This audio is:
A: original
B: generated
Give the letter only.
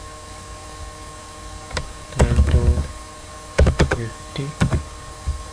B